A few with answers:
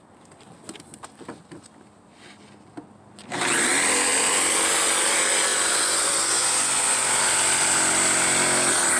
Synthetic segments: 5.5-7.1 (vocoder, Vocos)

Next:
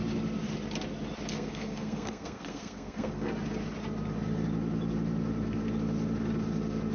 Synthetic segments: 1.3-3.3 (codec, SNAC)

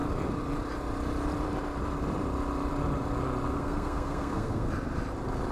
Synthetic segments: 3.5-4.7 (codec, SNAC)

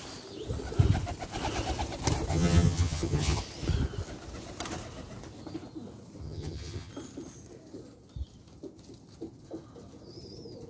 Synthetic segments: 2.3-3.4 (vocoder, HiFi-GAN); 6.2-6.9

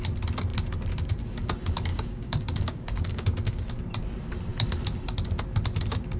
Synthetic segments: 1.9-3.7 (codec, DAC)

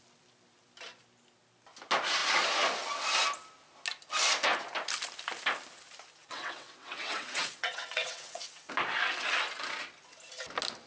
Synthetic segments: 6.2-8.7 (vocoder, WaveNeXt)